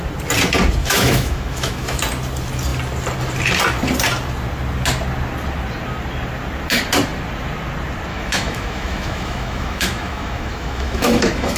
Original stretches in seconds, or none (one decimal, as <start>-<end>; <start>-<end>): 0.0-0.8; 2.0-8.1

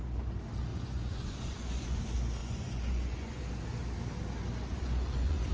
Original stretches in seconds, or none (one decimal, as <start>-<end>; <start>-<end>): 0.0-0.7; 2.0-2.4; 3.4-4.7